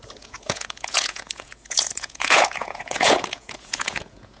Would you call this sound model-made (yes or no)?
yes